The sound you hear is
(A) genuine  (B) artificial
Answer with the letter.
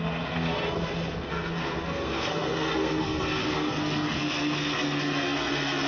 B